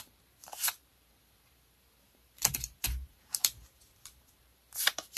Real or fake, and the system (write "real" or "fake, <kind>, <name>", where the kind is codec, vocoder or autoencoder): fake, vocoder, BigVGAN v2